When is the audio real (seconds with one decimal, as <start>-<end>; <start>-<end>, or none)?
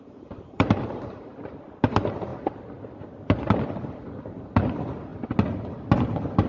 1.3-1.8; 2.3-4.1; 5.1-6.5